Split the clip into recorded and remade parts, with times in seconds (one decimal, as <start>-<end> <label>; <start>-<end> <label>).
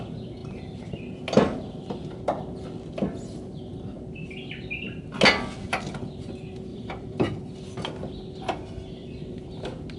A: 0.0-6.7 recorded; 6.7-7.4 remade; 7.4-9.0 recorded; 9.0-9.5 remade; 9.5-10.0 recorded